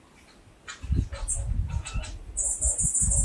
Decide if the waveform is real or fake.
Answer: real